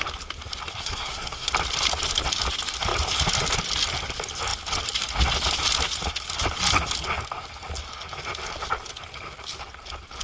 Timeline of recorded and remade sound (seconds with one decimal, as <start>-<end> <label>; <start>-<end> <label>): 0.0-0.8 recorded; 0.8-1.5 remade; 1.5-10.2 recorded